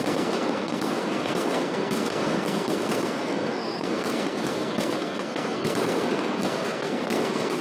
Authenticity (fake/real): fake